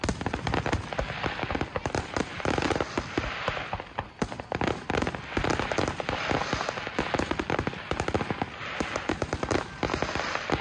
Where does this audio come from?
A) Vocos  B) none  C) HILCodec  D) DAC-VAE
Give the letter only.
B